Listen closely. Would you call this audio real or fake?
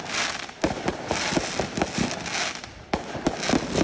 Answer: real